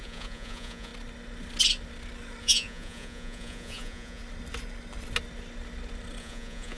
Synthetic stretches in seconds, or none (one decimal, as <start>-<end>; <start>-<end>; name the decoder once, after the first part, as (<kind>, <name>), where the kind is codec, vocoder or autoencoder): 0.0-0.9 (vocoder, Vocos); 2.4-4.2; 6.2-6.8